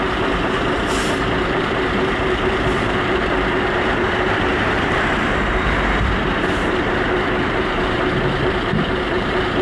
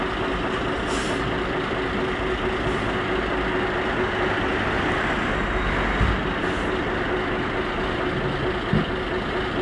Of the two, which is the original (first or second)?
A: second